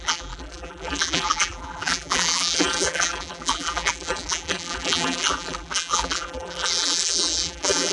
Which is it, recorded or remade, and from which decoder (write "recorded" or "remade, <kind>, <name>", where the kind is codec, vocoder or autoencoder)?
remade, vocoder, BigVGAN v2